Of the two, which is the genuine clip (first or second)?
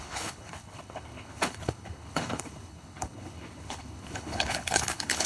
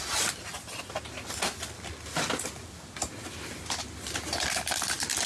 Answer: second